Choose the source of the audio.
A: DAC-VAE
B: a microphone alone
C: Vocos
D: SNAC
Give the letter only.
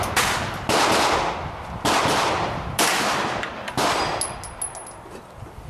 B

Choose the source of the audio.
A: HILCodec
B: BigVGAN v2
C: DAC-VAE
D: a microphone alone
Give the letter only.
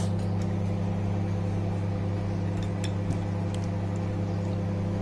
D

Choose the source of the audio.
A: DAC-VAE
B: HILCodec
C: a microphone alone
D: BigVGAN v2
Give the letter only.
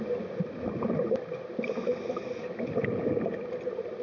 C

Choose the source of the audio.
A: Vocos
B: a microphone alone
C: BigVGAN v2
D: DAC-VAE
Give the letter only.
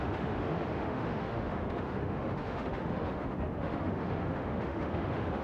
D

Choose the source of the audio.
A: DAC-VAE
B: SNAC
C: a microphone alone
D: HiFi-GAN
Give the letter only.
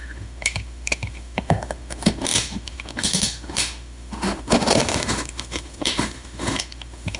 A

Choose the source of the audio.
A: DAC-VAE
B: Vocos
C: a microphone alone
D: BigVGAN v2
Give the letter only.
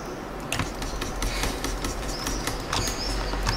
C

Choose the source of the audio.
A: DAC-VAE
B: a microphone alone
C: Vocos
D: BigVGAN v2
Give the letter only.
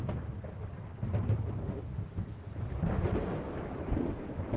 B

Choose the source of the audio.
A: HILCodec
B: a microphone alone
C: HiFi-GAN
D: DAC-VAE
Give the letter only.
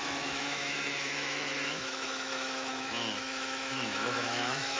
D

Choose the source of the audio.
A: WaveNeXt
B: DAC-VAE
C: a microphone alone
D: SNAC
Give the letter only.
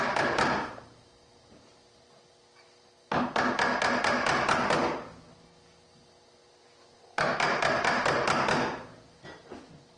C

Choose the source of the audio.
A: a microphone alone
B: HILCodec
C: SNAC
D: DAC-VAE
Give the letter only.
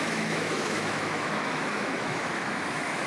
D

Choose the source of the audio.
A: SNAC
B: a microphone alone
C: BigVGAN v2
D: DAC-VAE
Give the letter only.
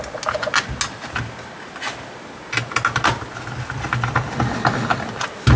B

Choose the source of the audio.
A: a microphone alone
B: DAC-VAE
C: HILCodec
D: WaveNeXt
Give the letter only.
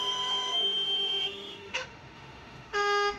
B